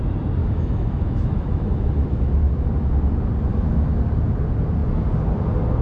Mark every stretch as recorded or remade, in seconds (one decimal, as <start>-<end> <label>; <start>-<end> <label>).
0.0-0.4 recorded; 0.4-2.5 remade; 2.5-3.5 recorded; 3.5-4.0 remade; 4.0-5.8 recorded